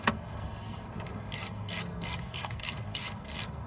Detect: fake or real fake